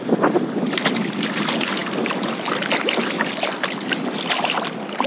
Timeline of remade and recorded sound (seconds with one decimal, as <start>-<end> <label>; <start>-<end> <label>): 0.0-5.1 recorded